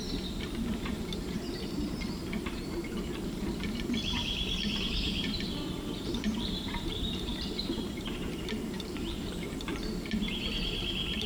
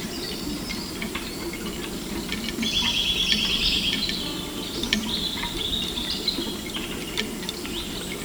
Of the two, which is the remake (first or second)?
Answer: first